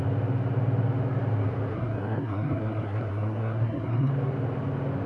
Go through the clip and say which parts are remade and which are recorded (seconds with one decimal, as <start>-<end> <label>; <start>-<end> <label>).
0.0-1.7 recorded; 1.7-4.1 remade; 4.1-5.1 recorded